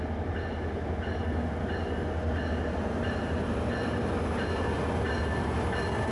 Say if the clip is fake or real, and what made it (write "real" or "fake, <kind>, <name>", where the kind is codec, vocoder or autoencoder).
real